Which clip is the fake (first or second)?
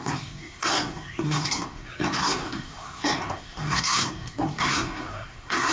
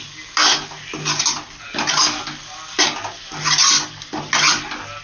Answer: first